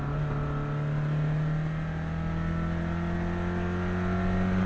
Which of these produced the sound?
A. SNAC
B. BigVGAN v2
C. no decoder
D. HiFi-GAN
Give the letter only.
C